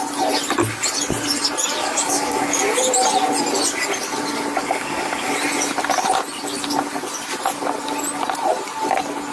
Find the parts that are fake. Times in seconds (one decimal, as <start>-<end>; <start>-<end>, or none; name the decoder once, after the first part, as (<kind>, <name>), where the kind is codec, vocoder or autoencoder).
1.8-2.6 (codec, DAC); 4.6-5.3